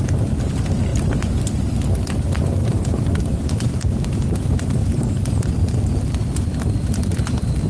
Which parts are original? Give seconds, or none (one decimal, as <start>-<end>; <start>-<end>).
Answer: 0.0-2.6; 5.4-7.7